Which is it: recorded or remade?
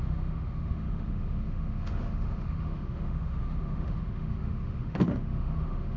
remade